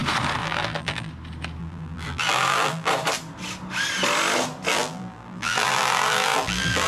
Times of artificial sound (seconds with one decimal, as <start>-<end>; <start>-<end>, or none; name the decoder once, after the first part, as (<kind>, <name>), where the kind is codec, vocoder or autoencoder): 0.4-1.1 (vocoder, BigVGAN v2); 1.6-2.9; 4.7-6.9